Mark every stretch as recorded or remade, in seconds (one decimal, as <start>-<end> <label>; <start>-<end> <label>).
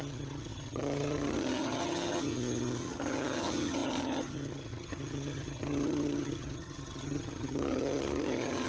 0.0-8.7 remade